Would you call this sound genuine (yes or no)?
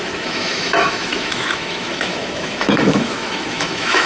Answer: no